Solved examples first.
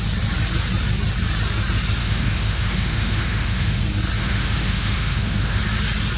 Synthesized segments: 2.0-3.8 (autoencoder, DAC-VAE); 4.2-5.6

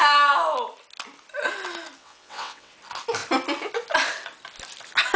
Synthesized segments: 2.0-2.7 (vocoder, WaveNeXt)

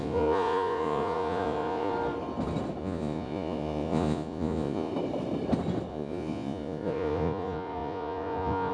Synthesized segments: 0.0-1.9 (vocoder, Vocos); 2.8-4.9; 5.9-8.7

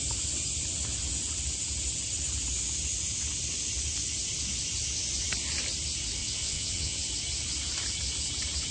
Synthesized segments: 6.2-7.1 (vocoder, WaveNeXt)

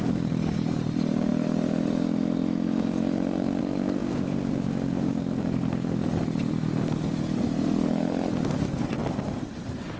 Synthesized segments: none

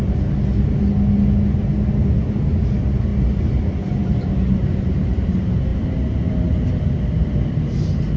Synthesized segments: none